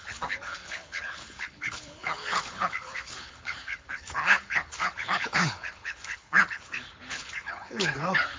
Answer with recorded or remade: remade